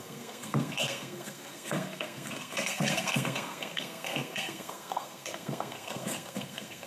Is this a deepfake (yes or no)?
yes